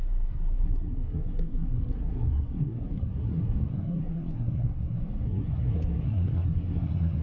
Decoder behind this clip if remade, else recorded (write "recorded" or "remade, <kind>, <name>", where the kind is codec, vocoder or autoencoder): remade, codec, SNAC